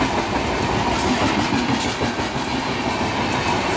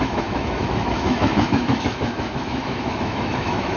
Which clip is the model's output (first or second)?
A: second